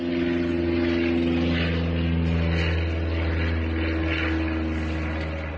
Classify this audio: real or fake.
real